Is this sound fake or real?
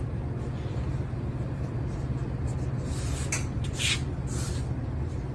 real